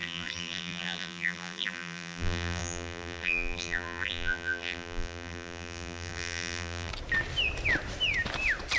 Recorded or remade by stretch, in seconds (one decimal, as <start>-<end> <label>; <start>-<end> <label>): 0.0-6.9 remade; 6.9-8.8 recorded